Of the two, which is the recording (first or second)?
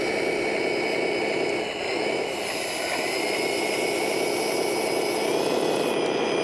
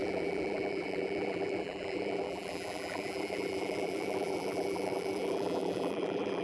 first